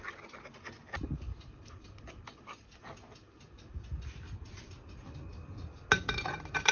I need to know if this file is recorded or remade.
recorded